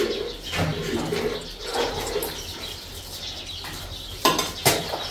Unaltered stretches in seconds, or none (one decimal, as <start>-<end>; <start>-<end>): 0.0-5.1